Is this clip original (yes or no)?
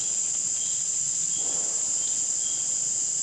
yes